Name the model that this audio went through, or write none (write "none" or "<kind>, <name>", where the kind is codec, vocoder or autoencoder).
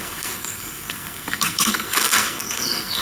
codec, SNAC